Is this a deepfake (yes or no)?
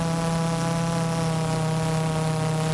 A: no